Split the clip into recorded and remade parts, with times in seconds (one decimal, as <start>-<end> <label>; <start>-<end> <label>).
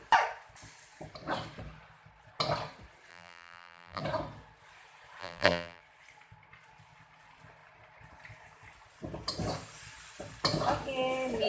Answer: 0.0-3.1 recorded; 3.1-4.0 remade; 4.0-5.2 recorded; 5.2-5.8 remade; 5.8-11.5 recorded